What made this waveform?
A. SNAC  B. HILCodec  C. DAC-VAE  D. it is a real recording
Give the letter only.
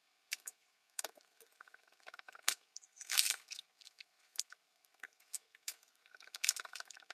A